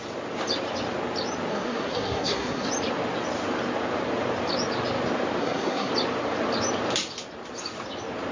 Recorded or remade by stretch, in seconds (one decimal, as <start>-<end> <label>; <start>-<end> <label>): 0.0-1.5 recorded; 1.5-2.7 remade; 2.7-5.4 recorded; 5.4-5.9 remade; 5.9-8.3 recorded